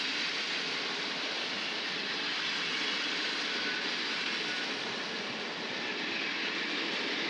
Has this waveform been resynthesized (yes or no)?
no